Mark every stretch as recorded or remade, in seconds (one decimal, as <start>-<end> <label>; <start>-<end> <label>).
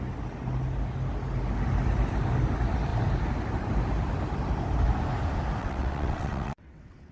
0.0-5.6 recorded; 5.6-7.1 remade